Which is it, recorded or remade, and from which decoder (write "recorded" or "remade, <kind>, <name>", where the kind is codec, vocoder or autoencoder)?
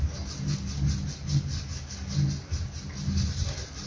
recorded